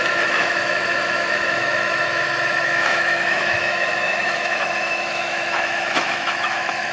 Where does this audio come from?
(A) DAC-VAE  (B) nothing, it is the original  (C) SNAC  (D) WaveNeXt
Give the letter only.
A